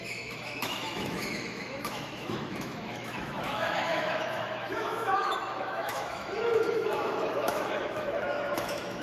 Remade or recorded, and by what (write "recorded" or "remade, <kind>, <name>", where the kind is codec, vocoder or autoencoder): remade, autoencoder, DAC-VAE